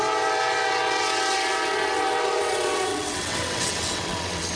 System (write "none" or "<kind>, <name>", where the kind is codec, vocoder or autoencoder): vocoder, WaveNeXt